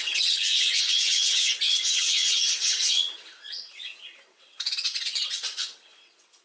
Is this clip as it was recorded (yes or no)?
no